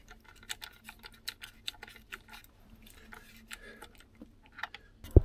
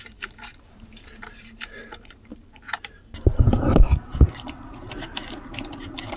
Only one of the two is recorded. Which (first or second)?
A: first